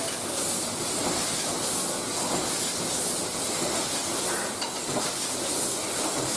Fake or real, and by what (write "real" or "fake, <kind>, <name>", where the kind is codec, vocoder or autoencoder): real